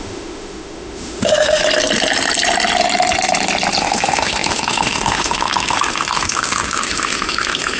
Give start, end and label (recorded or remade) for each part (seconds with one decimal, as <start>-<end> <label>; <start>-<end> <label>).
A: 0.0-1.6 remade; 1.6-3.8 recorded; 3.8-7.8 remade